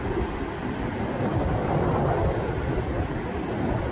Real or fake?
real